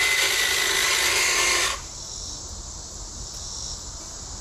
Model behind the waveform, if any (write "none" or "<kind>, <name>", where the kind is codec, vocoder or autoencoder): none